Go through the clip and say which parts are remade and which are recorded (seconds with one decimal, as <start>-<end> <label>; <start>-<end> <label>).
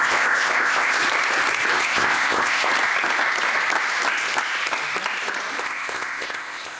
0.0-1.0 remade; 1.0-1.7 recorded; 1.7-2.7 remade; 2.7-5.6 recorded; 5.6-6.8 remade